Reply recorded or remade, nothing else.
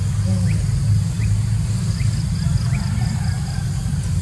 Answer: recorded